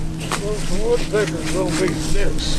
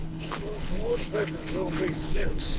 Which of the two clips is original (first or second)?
first